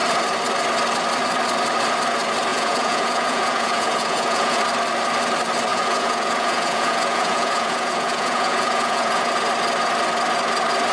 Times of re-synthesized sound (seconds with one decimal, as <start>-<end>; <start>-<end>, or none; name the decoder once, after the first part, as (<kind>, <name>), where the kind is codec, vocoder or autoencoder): 2.5-4.6 (vocoder, Vocos); 5.7-9.3